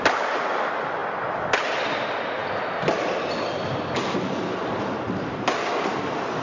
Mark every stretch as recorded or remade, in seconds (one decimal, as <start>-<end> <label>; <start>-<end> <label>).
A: 0.0-6.4 recorded